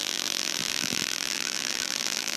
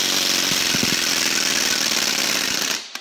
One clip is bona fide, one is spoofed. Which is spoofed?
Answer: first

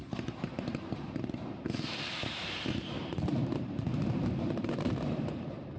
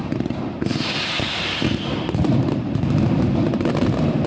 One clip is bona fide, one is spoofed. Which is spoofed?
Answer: first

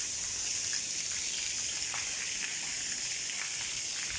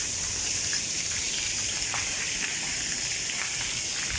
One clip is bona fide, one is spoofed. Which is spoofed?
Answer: second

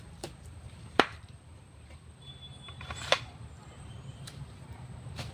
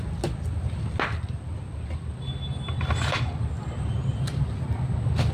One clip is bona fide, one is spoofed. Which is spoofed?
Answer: first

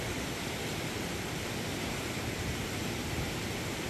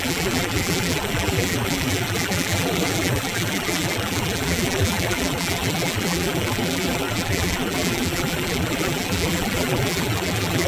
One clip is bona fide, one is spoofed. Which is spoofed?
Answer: second